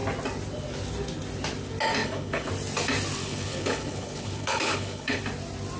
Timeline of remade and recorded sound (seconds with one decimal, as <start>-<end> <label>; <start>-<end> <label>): 0.0-2.0 recorded; 2.0-2.5 remade; 2.5-3.2 recorded; 3.2-5.2 remade; 5.2-5.8 recorded